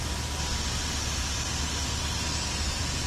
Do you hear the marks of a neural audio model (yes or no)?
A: no